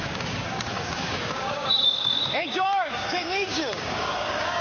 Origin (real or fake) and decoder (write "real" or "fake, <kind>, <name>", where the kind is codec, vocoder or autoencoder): fake, codec, DAC